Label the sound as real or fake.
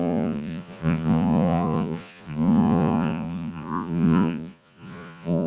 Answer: fake